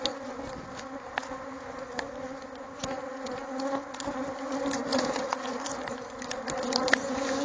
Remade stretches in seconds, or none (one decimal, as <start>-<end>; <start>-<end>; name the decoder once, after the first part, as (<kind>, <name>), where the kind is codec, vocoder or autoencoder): 4.9-5.6 (vocoder, Vocos)